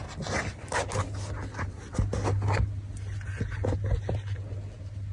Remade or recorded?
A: recorded